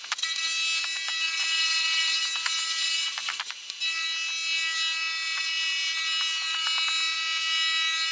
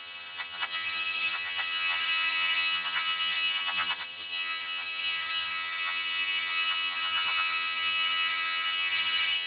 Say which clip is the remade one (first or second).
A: second